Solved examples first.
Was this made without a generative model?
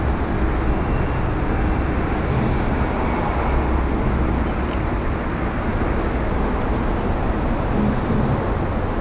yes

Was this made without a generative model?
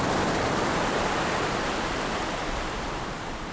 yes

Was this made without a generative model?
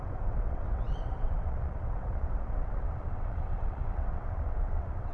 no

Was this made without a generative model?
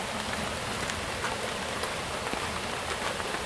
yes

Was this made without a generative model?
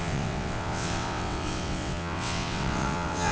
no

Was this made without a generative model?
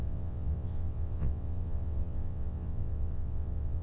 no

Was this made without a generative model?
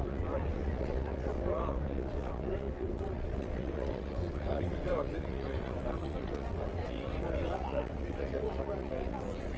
no